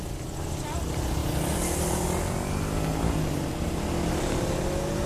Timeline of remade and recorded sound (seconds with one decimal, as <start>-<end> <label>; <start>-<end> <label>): 0.0-5.1 recorded